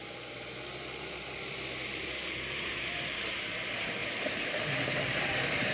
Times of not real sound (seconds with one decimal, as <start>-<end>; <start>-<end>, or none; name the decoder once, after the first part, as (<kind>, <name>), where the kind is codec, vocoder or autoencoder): 1.5-5.7 (vocoder, BigVGAN v2)